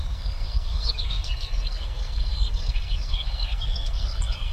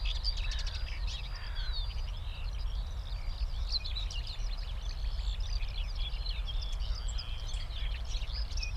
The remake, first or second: first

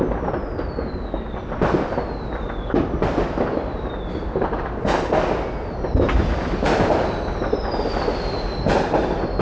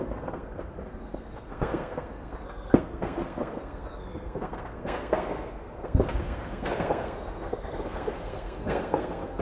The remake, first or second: second